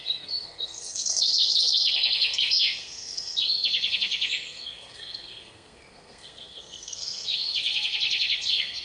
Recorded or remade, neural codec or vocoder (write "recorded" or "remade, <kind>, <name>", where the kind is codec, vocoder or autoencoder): remade, codec, SNAC